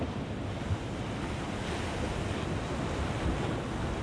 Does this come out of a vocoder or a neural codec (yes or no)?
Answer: no